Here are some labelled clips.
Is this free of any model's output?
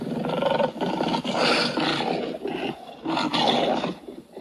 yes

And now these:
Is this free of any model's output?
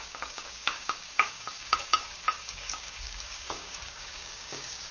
no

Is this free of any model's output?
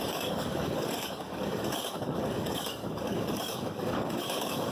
no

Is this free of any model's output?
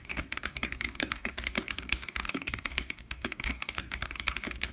no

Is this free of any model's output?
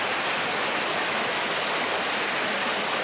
yes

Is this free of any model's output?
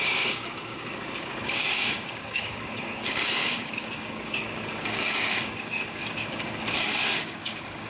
no